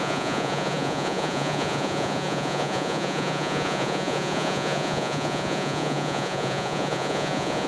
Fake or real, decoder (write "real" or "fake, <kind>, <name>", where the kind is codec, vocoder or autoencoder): fake, vocoder, Vocos